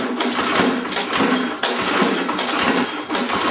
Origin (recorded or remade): recorded